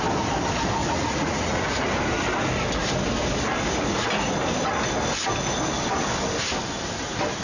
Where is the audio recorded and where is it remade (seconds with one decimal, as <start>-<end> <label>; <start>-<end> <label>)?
0.0-0.8 recorded; 0.8-1.9 remade; 1.9-7.4 recorded